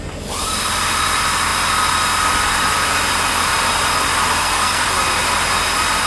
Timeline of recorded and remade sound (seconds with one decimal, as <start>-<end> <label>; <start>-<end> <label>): 0.0-4.4 recorded; 4.4-4.9 remade; 4.9-6.1 recorded